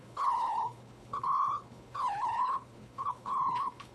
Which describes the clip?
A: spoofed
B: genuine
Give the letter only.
A